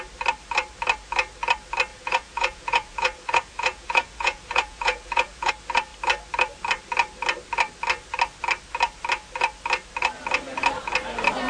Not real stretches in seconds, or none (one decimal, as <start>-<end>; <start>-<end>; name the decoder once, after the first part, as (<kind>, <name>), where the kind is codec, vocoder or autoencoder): 1.9-5.5 (vocoder, Vocos)